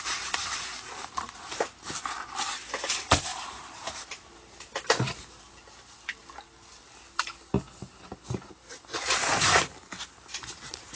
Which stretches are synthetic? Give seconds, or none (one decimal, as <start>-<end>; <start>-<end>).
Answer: 3.3-5.4